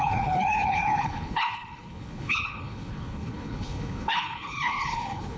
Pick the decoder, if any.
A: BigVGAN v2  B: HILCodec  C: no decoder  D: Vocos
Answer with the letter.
B